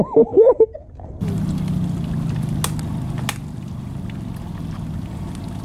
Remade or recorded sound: recorded